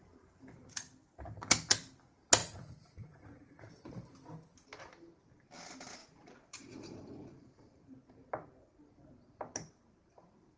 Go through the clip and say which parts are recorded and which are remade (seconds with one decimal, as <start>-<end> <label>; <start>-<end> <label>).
0.0-2.4 recorded; 2.4-3.7 remade; 3.7-6.0 recorded; 6.0-7.9 remade; 7.9-10.6 recorded